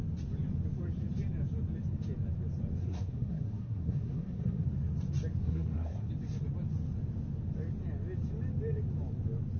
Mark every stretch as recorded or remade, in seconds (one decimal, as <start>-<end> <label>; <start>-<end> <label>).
0.0-2.8 recorded; 2.8-4.6 remade; 4.6-5.4 recorded; 5.4-6.1 remade; 6.1-9.6 recorded